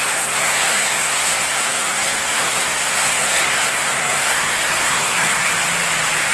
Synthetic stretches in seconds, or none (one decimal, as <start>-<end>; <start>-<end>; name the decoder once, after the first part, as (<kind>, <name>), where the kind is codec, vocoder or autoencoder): 0.0-5.5 (codec, SNAC)